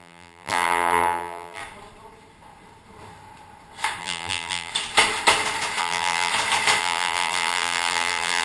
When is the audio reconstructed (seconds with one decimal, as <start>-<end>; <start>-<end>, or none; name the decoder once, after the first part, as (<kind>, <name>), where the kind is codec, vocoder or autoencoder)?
0.0-1.6 (vocoder, BigVGAN v2); 4.0-4.7; 5.8-6.3; 6.8-8.4